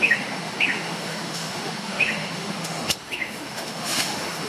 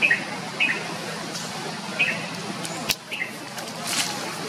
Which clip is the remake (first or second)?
first